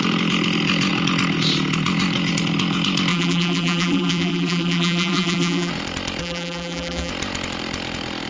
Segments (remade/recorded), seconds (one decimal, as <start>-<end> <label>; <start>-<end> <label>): 0.0-3.1 recorded; 3.1-5.7 remade; 5.7-6.2 recorded; 6.2-7.1 remade; 7.1-8.3 recorded